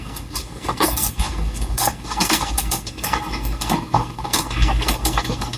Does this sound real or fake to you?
fake